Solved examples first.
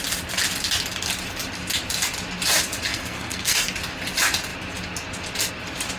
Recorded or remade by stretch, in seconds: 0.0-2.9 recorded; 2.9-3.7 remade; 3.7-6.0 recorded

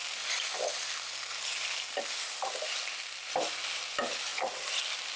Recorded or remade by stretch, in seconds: 0.0-4.3 recorded; 4.3-4.8 remade; 4.8-5.2 recorded

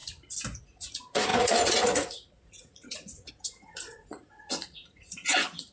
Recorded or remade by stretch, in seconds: 0.0-0.6 recorded; 0.6-5.7 remade

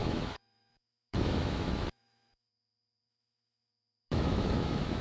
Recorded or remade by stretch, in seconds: 0.0-5.0 remade

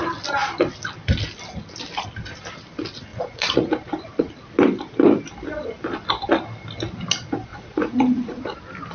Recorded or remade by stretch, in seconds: 0.0-3.1 recorded; 3.1-3.7 remade; 3.7-7.5 recorded; 7.5-8.4 remade; 8.4-8.9 recorded

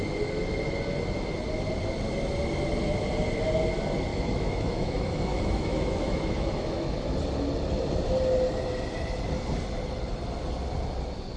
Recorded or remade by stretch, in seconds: 0.0-4.1 recorded; 4.1-6.9 remade; 6.9-11.4 recorded

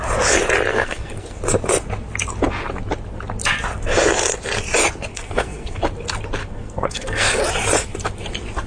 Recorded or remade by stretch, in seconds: 0.0-0.7 recorded; 0.7-1.4 remade; 1.4-5.1 recorded; 5.1-5.8 remade; 5.8-6.4 recorded; 6.4-7.4 remade; 7.4-8.7 recorded

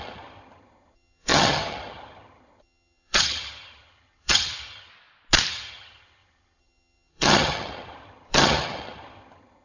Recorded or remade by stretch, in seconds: 0.0-4.9 remade; 4.9-5.5 recorded; 5.5-9.6 remade